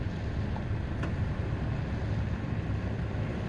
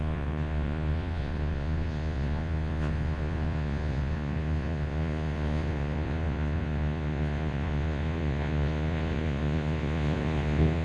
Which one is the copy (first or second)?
second